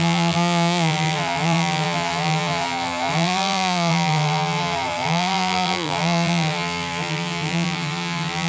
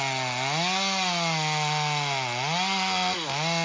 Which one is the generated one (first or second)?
first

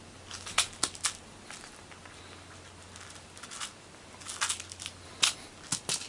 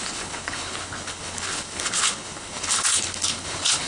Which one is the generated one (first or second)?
second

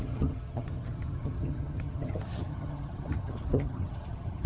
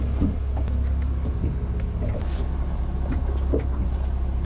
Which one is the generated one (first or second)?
first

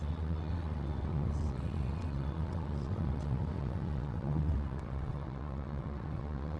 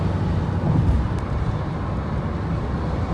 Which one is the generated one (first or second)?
first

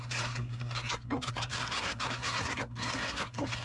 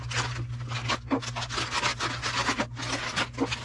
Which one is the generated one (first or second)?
first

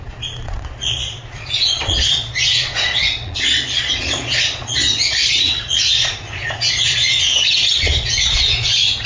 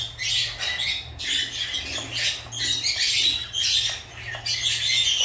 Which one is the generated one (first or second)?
first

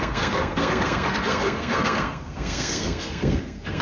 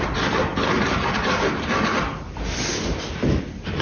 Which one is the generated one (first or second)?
first